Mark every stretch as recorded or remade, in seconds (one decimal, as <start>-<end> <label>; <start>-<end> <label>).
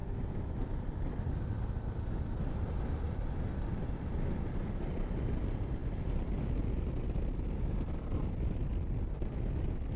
0.0-10.0 recorded